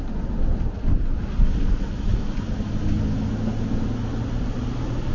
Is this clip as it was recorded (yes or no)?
yes